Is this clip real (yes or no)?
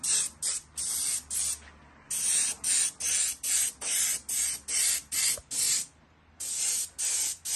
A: yes